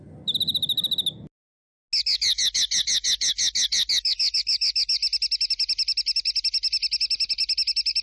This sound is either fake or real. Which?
real